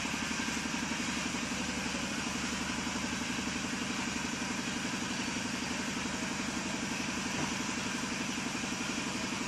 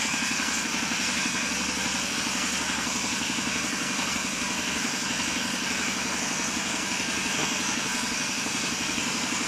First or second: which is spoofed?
second